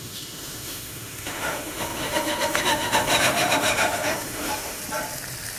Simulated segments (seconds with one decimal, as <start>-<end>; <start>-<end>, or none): 0.0-4.8